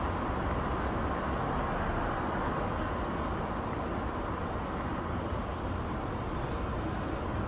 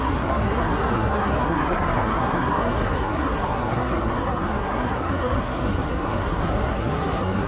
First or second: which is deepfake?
second